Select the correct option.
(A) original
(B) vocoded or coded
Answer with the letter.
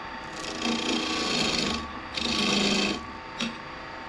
A